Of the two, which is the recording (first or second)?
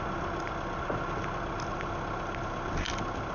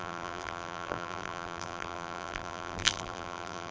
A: first